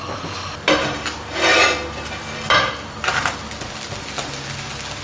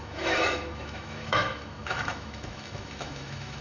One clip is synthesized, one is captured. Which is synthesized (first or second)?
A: second